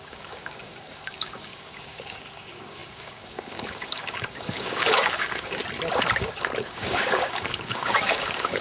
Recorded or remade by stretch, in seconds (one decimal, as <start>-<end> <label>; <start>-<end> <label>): 0.0-5.6 remade; 5.6-6.2 recorded; 6.2-8.6 remade

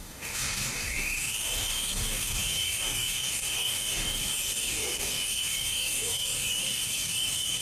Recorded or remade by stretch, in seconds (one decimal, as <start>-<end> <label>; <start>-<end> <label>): 0.0-7.6 remade